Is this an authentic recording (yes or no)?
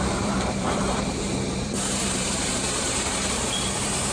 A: no